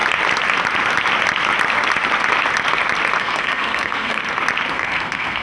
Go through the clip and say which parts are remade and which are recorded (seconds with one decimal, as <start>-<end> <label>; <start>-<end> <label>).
0.0-3.2 recorded; 3.2-4.2 remade; 4.2-4.7 recorded; 4.7-5.4 remade